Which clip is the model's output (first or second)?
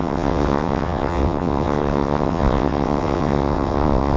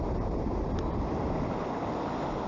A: first